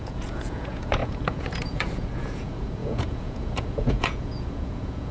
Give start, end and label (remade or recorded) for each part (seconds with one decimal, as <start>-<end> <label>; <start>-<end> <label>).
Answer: 0.0-5.1 remade